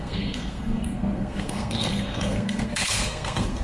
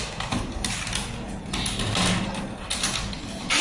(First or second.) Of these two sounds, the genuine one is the second